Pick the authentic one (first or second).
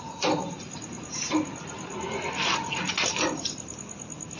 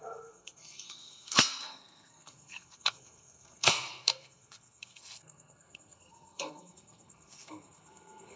first